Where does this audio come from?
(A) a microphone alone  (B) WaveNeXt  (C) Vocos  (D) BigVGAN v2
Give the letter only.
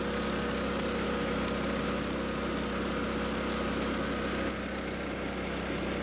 A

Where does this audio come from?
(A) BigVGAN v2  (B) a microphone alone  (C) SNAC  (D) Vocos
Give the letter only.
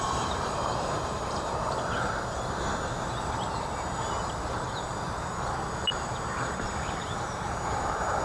A